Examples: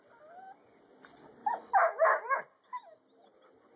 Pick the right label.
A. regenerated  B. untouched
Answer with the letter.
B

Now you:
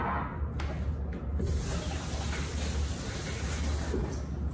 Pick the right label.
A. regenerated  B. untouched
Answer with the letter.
B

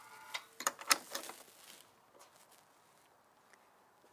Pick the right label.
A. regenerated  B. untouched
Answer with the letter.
B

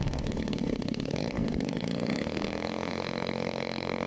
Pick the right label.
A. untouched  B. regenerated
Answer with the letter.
B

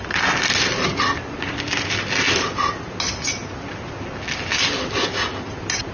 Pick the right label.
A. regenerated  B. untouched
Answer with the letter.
B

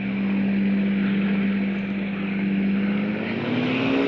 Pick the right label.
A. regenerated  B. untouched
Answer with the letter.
B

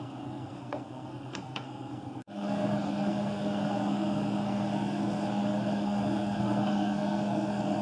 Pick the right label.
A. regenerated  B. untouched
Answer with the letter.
A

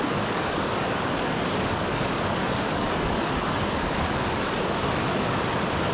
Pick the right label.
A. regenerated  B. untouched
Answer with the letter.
A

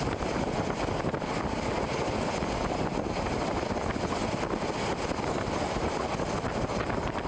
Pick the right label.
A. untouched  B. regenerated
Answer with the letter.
A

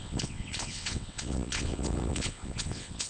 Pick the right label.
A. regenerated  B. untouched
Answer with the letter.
A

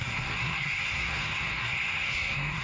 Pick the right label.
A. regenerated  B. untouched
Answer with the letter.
A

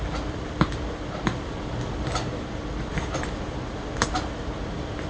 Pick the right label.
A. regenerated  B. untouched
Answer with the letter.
B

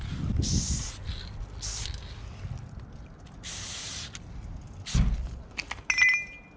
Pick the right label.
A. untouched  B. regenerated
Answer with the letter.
A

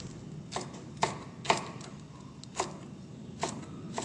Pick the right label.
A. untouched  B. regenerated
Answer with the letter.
A